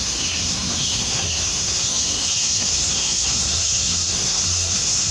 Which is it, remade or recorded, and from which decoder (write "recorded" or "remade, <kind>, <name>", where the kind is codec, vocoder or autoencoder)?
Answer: remade, codec, SNAC